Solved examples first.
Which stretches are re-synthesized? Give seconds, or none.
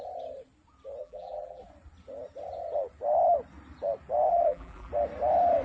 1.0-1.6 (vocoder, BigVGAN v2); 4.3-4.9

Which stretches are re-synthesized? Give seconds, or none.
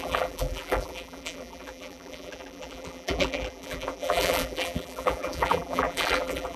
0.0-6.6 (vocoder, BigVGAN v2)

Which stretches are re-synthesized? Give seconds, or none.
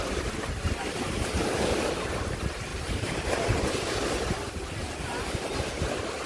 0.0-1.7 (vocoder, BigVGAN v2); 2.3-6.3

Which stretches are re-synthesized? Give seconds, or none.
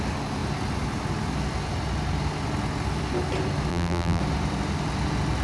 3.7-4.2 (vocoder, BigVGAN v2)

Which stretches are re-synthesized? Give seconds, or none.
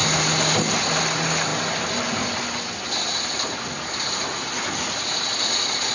none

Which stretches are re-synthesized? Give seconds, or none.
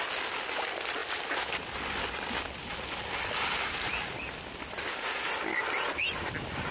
5.5-6.7 (vocoder, BigVGAN v2)